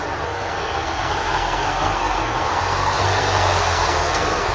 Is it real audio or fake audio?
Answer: fake